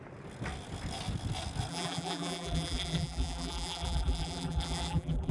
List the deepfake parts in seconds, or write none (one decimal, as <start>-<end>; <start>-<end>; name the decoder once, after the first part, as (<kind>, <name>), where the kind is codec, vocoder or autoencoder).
1.7-5.3 (vocoder, BigVGAN v2)